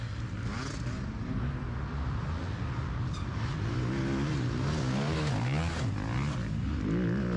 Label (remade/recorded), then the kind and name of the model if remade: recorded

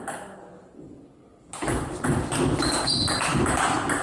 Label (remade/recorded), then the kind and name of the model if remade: recorded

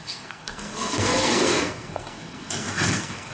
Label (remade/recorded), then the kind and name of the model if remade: remade, codec, SNAC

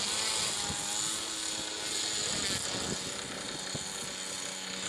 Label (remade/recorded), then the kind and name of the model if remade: recorded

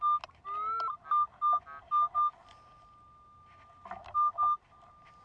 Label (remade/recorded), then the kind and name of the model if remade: recorded